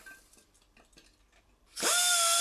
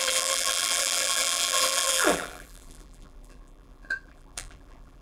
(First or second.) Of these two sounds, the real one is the first